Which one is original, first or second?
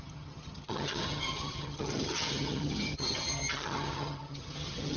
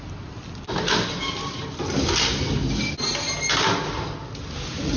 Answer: second